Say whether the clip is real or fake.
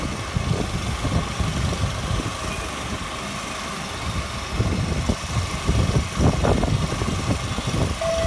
real